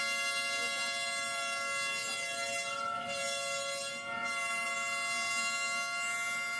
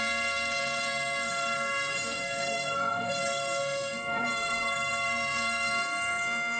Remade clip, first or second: second